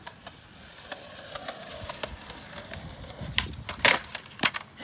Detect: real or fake real